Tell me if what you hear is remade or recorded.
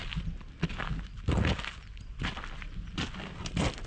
recorded